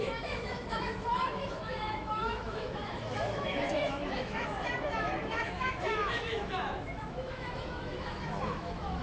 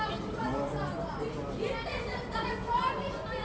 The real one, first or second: second